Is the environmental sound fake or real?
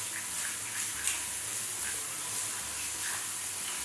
real